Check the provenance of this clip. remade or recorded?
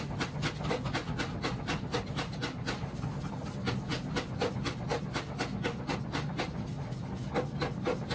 recorded